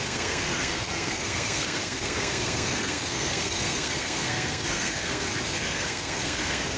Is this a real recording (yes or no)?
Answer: no